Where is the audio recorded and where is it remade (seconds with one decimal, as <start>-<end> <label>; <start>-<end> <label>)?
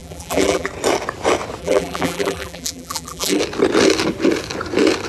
0.0-0.7 remade; 0.7-1.6 recorded; 1.6-3.4 remade; 3.4-5.1 recorded